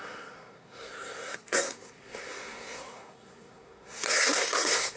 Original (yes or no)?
no